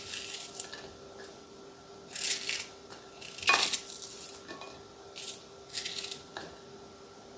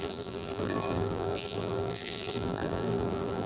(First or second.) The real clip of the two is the first